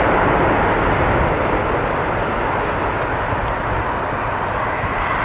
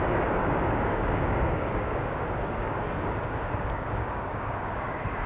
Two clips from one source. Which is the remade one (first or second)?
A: second